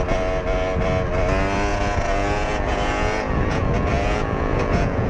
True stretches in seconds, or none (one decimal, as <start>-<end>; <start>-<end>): 0.0-1.7